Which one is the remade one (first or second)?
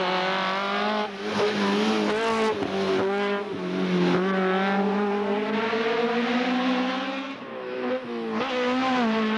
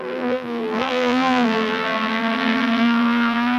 second